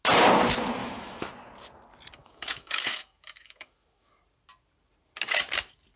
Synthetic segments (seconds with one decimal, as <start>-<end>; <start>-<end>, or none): 0.8-1.3; 2.2-4.1